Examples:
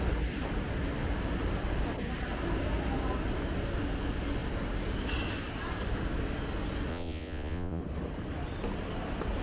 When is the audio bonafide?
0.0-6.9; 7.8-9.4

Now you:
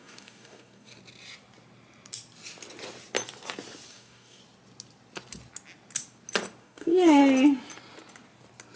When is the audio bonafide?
1.0-3.9; 4.4-6.6; 7.2-8.8

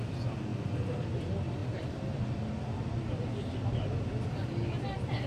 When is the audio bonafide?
0.0-1.6; 4.0-5.3

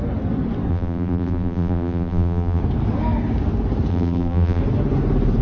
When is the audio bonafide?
0.0-0.7; 2.6-3.9; 4.6-5.4

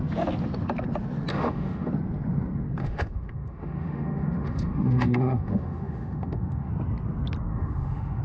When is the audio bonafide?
0.0-1.3; 1.9-2.8; 6.7-7.5

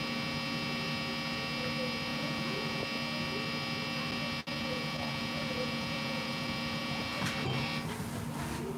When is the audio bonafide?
0.0-2.1; 2.8-4.6; 7.1-8.8

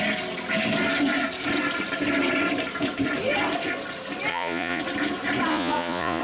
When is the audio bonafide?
0.0-4.3; 4.8-5.5

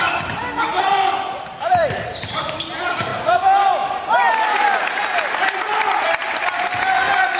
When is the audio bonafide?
0.0-0.7; 2.7-7.4